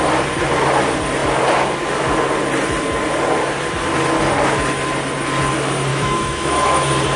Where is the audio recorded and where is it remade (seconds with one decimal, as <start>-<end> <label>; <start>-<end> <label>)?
0.0-5.9 recorded; 5.9-6.8 remade; 6.8-7.2 recorded